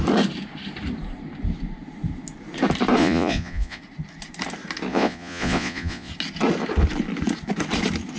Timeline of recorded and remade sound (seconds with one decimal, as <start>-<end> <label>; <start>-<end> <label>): 0.0-3.0 recorded; 3.0-3.8 remade; 3.8-4.9 recorded; 4.9-6.1 remade; 6.1-8.2 recorded